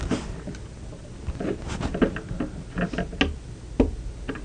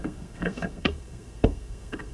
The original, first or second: first